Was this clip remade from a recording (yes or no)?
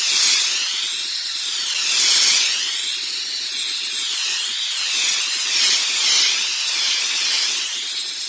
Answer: no